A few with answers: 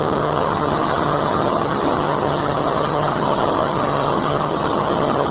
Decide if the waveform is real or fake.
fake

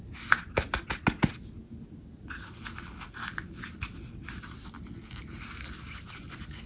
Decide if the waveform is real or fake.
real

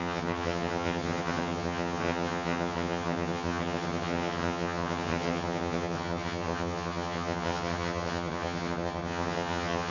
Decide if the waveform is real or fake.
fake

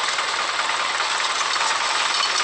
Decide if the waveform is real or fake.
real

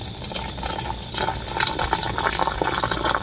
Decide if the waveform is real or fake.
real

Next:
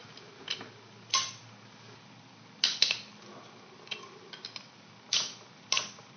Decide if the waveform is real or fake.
real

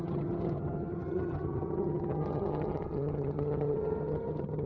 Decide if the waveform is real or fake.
fake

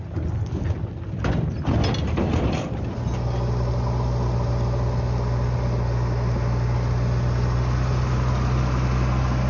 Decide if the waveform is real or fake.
real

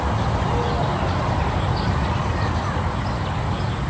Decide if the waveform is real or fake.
real